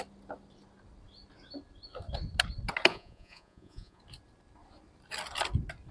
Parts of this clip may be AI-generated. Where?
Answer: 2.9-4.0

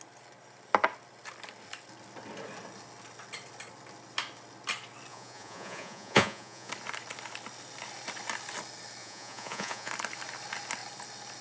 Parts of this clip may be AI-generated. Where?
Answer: 5.1-6.7; 9.0-9.9

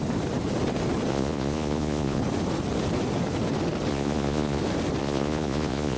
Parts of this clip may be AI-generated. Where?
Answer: 1.1-2.2; 3.9-4.6; 5.0-6.0

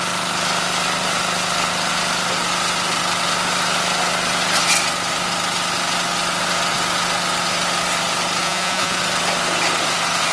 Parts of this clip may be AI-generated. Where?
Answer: 8.4-9.0

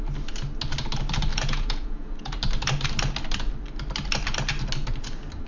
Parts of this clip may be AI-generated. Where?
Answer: 1.3-2.3

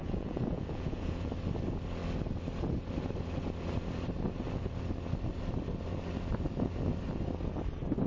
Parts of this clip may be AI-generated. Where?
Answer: 0.0-1.3